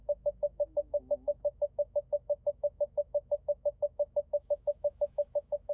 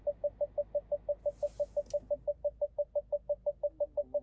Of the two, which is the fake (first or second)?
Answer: first